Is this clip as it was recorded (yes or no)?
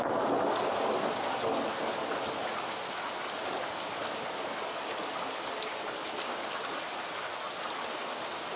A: yes